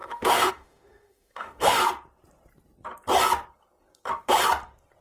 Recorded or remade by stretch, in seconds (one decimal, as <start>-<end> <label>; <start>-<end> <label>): 0.0-1.8 remade; 1.8-5.0 recorded